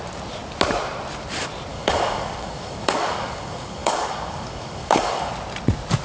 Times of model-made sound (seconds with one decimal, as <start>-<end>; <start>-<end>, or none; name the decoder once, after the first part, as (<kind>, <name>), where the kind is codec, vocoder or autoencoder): 1.7-5.3 (codec, DAC)